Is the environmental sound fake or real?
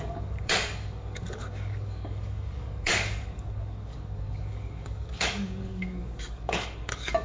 fake